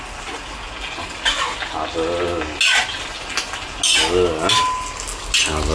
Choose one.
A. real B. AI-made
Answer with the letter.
A